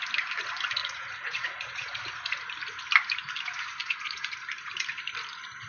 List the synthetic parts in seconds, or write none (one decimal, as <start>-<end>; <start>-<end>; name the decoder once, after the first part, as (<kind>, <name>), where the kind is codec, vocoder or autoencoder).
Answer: 0.8-2.0 (vocoder, Vocos); 3.8-4.3